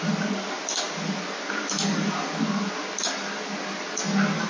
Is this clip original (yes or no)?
yes